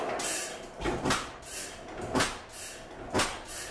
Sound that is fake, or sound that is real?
real